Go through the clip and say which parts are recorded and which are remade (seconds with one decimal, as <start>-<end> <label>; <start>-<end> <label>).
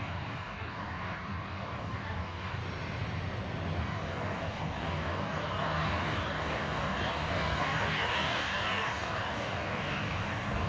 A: 0.0-2.6 remade; 2.6-3.8 recorded; 3.8-10.7 remade